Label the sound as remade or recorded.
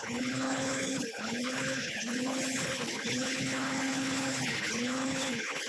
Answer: remade